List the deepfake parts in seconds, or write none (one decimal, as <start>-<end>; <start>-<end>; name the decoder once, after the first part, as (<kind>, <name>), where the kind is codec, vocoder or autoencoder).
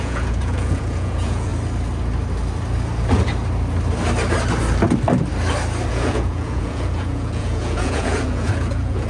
0.0-1.5 (vocoder, Vocos); 5.9-9.1